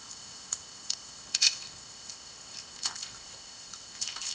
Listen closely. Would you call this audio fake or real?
fake